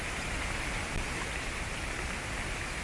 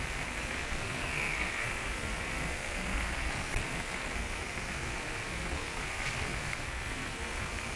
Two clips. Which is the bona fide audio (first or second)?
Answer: first